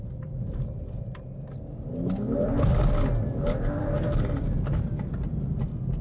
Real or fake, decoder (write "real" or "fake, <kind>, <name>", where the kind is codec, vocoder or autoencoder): real